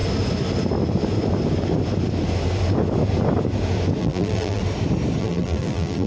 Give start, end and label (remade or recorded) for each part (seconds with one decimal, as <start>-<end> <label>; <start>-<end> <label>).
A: 0.0-4.0 recorded; 4.0-4.6 remade; 4.6-5.2 recorded; 5.2-6.1 remade